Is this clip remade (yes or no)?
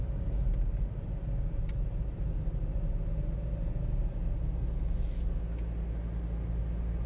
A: no